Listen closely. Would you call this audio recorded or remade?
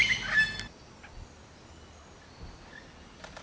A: recorded